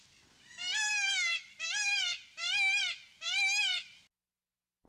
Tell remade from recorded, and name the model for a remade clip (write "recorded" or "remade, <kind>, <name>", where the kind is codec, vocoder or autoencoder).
recorded